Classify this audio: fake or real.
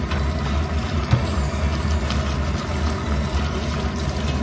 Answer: real